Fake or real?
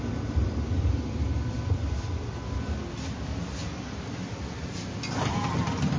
real